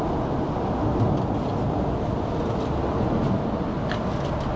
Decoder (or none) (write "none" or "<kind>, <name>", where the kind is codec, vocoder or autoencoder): none